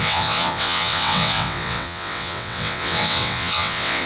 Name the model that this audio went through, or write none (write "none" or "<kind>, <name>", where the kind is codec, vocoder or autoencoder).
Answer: vocoder, WaveNeXt